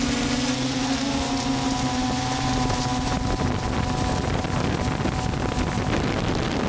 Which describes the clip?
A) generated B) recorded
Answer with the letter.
B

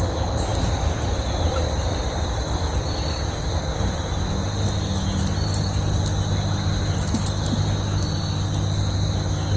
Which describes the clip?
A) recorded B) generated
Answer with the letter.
A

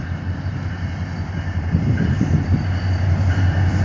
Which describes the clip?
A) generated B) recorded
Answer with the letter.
B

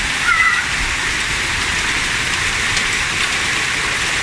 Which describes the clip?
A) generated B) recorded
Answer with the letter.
B